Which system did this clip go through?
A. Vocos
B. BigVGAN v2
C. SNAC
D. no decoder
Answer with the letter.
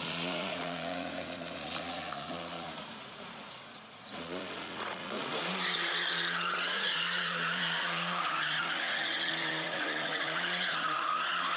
A